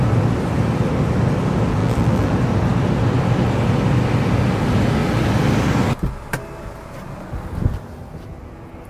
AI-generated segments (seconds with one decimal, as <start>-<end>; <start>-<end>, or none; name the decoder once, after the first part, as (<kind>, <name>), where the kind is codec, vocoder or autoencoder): 1.8-2.3 (vocoder, BigVGAN v2)